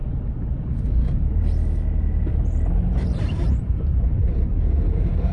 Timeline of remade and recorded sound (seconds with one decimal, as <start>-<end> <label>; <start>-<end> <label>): 0.0-1.4 remade; 1.4-2.3 recorded; 2.3-5.3 remade